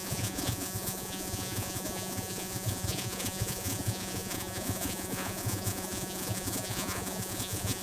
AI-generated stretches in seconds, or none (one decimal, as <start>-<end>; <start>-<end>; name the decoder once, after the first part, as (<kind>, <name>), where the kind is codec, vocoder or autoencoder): 0.0-7.8 (vocoder, Vocos)